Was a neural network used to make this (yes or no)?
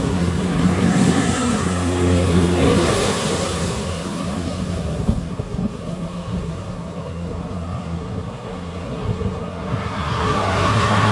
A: yes